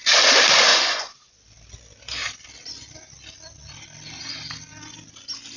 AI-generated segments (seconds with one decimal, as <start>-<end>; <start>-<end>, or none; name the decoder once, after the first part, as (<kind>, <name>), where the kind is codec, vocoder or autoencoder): 0.7-1.3 (vocoder, Vocos)